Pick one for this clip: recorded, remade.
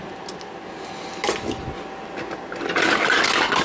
recorded